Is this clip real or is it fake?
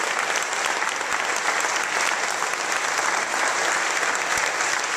real